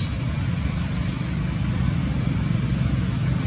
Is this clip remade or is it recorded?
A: recorded